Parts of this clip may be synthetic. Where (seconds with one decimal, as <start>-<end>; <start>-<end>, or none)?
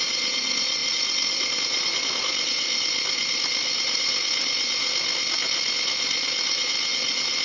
none